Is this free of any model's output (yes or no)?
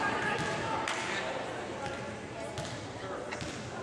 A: yes